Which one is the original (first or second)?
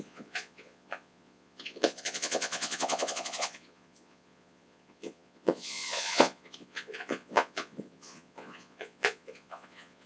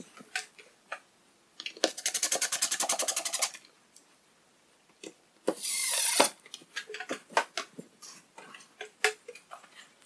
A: second